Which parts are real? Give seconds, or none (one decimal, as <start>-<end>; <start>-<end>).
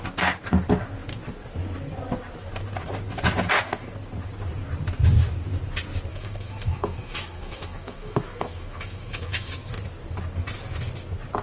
0.0-6.1; 9.6-11.4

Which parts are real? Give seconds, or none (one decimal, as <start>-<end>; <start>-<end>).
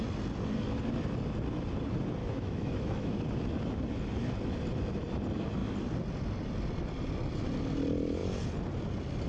0.0-2.2; 3.2-9.3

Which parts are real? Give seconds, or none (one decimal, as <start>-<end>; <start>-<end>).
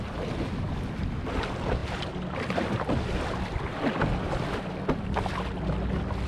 0.0-6.3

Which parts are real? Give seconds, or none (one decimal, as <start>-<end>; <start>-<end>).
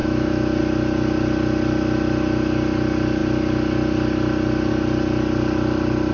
0.6-6.1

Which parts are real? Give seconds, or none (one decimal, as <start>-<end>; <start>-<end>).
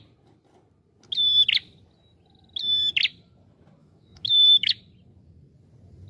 0.0-3.8; 4.8-6.1